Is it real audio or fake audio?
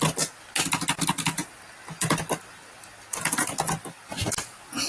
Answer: real